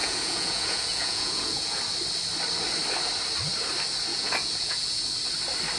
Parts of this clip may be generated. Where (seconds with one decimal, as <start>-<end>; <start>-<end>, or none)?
0.0-1.8; 4.1-5.1